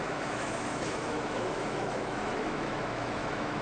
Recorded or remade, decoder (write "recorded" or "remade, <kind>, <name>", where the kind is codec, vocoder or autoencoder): remade, autoencoder, DAC-VAE